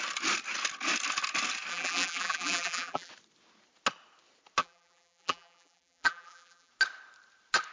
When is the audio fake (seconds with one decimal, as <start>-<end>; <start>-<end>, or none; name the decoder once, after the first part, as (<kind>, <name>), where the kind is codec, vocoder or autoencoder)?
1.7-3.1 (vocoder, BigVGAN v2); 4.6-6.7